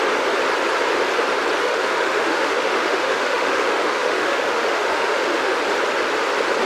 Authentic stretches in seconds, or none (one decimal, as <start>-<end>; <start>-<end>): 0.0-1.6; 5.6-6.7